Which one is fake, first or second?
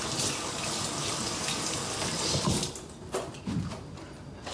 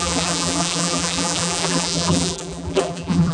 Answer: second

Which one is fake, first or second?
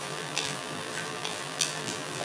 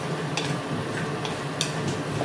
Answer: first